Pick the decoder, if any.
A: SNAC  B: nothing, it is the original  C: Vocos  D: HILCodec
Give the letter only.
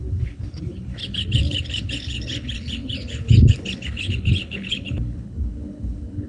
D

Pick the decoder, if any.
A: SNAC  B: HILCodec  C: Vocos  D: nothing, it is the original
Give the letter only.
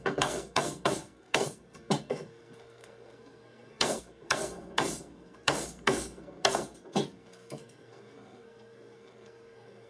A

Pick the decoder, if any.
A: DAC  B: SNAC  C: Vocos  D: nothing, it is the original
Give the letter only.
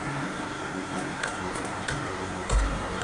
B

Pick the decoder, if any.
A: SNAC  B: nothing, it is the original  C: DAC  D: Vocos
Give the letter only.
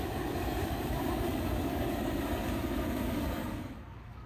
C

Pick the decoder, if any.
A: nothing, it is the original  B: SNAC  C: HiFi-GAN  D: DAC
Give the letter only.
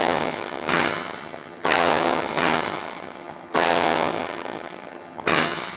C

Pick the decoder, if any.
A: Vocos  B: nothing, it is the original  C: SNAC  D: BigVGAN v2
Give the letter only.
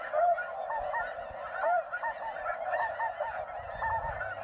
D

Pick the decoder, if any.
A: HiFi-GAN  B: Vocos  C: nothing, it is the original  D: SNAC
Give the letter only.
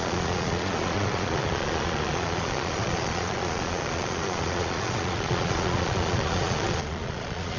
B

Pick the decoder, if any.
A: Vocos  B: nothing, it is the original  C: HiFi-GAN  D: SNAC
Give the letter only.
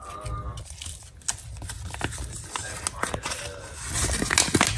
B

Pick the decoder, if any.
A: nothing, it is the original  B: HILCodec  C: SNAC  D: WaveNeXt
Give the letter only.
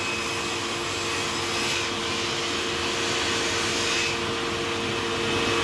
A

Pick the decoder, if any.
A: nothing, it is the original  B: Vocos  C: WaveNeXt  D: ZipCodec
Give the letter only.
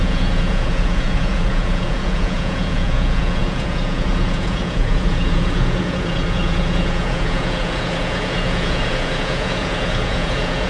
B